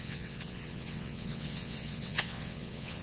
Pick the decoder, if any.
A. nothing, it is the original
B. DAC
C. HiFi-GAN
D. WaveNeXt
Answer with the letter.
D